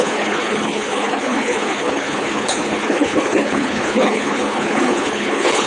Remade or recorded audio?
remade